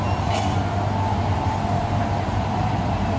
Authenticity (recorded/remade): remade